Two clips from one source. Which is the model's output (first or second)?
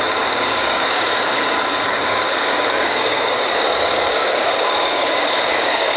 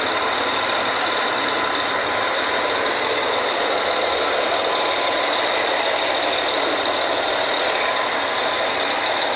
first